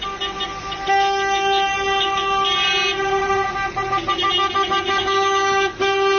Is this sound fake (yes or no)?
no